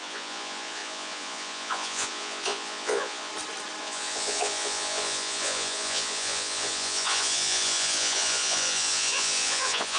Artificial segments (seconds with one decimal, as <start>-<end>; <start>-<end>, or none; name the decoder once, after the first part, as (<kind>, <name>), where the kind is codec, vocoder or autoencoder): 0.0-3.3 (vocoder, Vocos); 3.8-10.0